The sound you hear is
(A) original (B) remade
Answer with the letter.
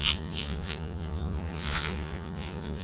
B